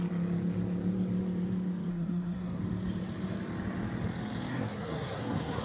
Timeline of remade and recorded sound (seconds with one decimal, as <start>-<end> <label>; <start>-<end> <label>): 0.0-1.9 recorded; 1.9-2.6 remade; 2.6-4.5 recorded; 4.5-5.6 remade